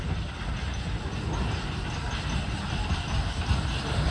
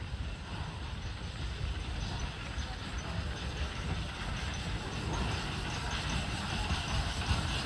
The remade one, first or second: second